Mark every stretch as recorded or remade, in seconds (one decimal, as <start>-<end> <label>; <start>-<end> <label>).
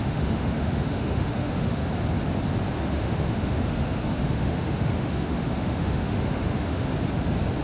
0.0-1.8 remade; 1.8-2.9 recorded; 2.9-6.9 remade; 6.9-7.6 recorded